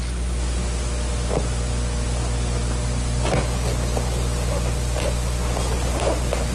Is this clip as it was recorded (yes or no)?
yes